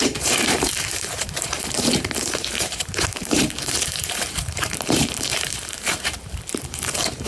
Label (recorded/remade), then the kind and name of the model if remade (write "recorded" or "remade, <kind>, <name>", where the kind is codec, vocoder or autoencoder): remade, vocoder, BigVGAN v2